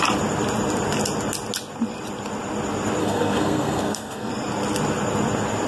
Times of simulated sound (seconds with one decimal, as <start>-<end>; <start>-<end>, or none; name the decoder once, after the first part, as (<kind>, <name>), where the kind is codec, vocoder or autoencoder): 3.0-4.3 (codec, SNAC)